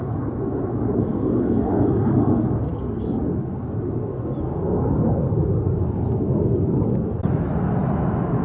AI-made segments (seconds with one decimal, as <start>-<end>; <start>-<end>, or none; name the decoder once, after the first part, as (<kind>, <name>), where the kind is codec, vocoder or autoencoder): none

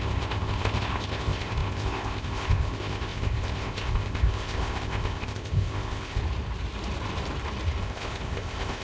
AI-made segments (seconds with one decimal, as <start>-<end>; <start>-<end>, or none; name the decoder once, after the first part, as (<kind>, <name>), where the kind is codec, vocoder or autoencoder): 0.0-6.2 (codec, ZipCodec); 7.8-8.8